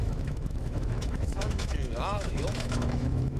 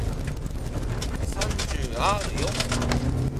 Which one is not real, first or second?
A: first